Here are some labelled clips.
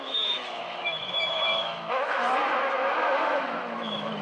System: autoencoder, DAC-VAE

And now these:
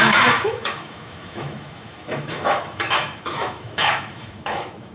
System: autoencoder, DAC-VAE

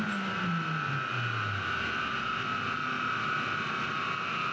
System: none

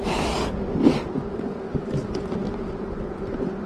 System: none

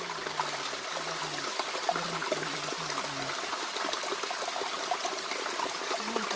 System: none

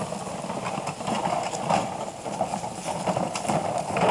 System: none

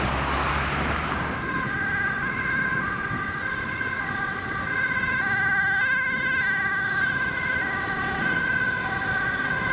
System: none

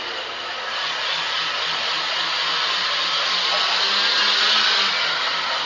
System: none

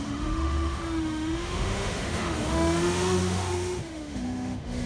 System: autoencoder, DAC-VAE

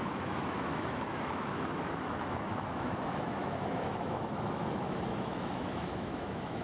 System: autoencoder, DAC-VAE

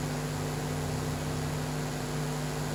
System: none